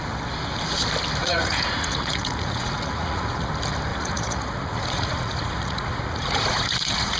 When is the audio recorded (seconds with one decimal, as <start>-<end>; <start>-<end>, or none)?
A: 0.0-1.2; 3.5-3.9